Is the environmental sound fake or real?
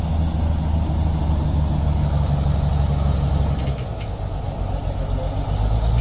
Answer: real